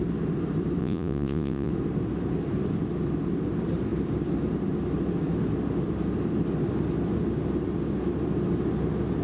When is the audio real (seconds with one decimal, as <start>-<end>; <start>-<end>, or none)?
0.0-0.8; 1.7-9.2